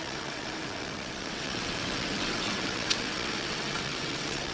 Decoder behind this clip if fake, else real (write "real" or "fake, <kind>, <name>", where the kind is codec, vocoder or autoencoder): fake, vocoder, WaveNeXt